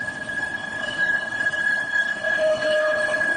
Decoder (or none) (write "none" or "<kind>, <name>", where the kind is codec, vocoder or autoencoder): codec, HILCodec